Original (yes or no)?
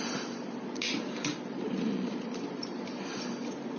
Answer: no